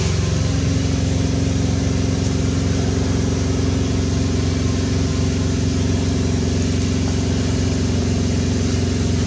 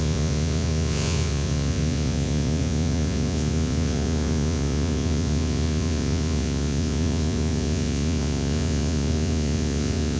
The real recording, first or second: first